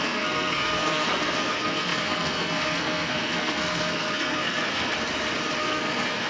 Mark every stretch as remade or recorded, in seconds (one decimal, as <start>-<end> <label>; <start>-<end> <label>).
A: 0.0-4.9 remade; 4.9-5.6 recorded; 5.6-6.3 remade